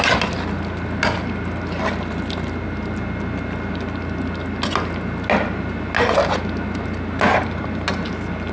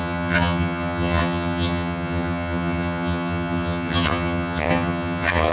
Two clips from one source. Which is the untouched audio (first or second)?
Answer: first